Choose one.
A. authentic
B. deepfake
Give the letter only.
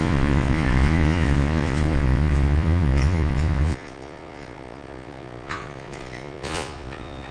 B